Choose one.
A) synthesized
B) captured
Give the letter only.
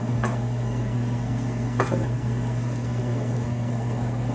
A